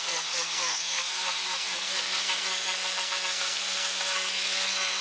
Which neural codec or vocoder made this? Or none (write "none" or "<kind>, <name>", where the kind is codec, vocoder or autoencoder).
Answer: codec, SNAC